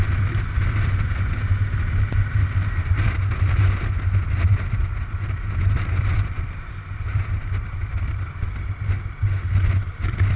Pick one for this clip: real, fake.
real